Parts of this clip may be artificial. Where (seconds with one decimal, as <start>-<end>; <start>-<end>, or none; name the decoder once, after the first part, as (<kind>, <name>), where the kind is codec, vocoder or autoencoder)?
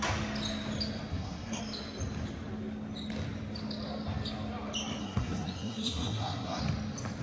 1.1-1.6 (codec, SNAC); 5.0-6.6